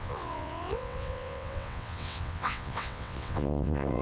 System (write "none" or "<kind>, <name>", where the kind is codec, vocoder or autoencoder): vocoder, WaveNeXt